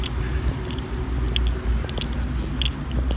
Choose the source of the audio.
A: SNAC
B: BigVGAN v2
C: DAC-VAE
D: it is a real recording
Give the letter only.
D